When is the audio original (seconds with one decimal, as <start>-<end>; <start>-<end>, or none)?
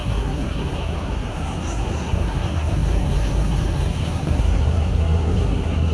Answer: none